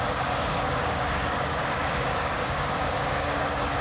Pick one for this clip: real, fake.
fake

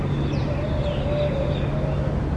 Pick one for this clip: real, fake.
real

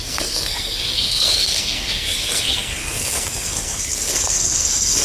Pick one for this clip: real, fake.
fake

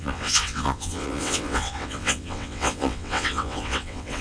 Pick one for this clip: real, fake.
fake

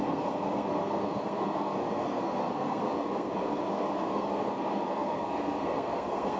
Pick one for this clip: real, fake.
fake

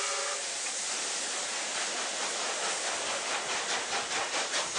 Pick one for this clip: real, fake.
real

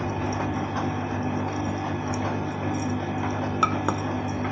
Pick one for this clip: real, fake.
real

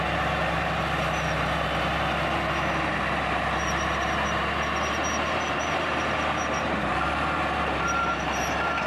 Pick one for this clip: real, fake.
fake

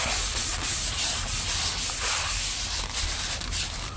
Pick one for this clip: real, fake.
real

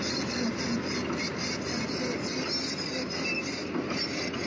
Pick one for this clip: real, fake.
real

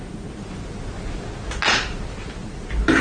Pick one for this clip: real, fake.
real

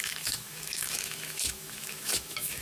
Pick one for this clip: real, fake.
fake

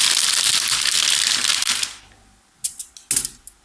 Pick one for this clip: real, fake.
real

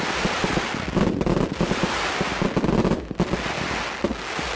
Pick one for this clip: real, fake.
real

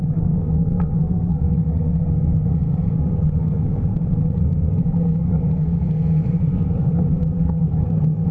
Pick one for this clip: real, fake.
fake